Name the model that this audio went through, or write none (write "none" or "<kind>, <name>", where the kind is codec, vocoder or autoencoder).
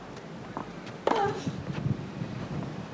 none